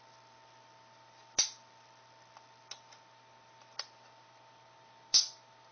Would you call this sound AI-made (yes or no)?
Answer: no